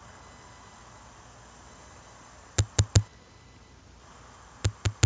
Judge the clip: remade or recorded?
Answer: recorded